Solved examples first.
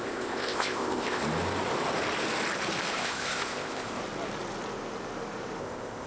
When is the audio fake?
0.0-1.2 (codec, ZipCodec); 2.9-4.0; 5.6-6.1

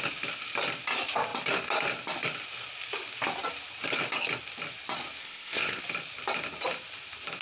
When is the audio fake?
5.2-5.8 (codec, ZipCodec)

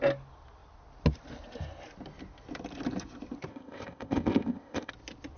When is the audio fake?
3.5-4.9 (codec, ZipCodec)

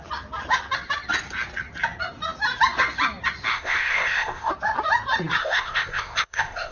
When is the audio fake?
3.5-4.5 (codec, ZipCodec); 5.4-6.7

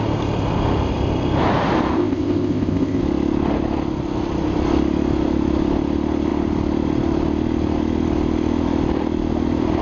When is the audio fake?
1.9-3.0 (codec, ZipCodec)

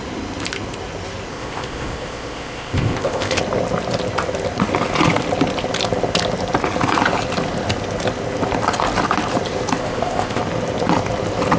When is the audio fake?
1.3-3.4 (codec, ZipCodec); 9.8-10.4

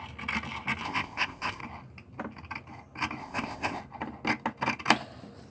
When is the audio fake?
0.8-1.6 (codec, ZipCodec); 3.2-3.8